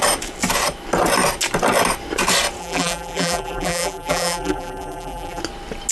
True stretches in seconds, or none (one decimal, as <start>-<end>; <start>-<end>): 0.0-2.6; 5.4-5.9

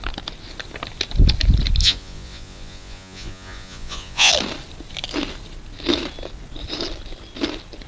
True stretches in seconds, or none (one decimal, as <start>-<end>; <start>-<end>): 0.0-1.8; 4.3-7.9

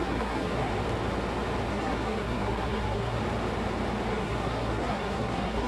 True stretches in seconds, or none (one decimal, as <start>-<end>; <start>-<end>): 0.7-1.7; 3.2-4.1